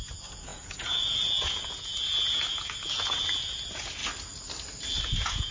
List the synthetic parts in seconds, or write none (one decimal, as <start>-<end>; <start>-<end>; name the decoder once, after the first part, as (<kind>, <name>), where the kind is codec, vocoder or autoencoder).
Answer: 0.0-4.0 (vocoder, Vocos); 5.0-5.5